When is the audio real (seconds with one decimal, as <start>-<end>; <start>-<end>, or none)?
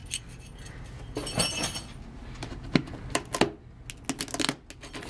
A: 0.0-5.1